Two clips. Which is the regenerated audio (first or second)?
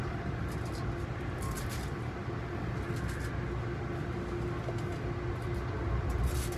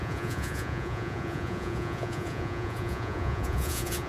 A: second